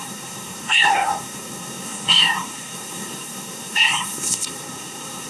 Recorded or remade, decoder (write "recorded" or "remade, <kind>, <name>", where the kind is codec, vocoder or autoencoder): remade, codec, SNAC